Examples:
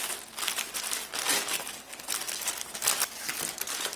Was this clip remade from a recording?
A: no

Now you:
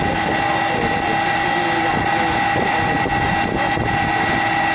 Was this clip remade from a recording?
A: no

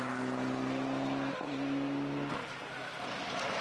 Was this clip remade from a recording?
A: no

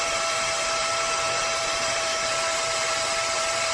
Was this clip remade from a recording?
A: yes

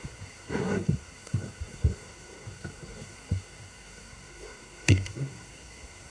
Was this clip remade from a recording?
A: yes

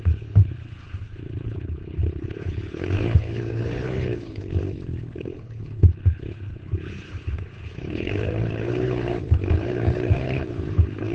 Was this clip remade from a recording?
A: yes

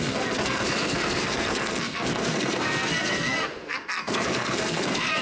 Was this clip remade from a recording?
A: yes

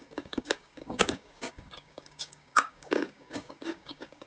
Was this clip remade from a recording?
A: yes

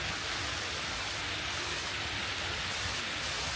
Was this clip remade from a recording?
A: no